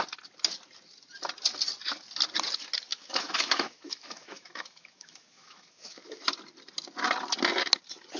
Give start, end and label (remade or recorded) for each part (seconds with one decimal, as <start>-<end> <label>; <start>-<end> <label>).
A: 0.0-2.9 recorded; 2.9-6.2 remade; 6.2-8.2 recorded